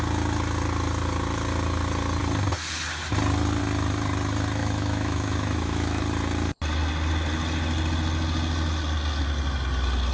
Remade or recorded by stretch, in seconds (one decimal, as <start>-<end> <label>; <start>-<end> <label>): 0.0-4.6 recorded; 4.6-6.0 remade; 6.0-10.1 recorded